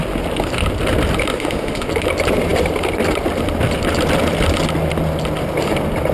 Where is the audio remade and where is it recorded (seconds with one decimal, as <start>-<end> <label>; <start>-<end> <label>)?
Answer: 0.0-1.3 recorded; 1.3-1.9 remade; 1.9-6.1 recorded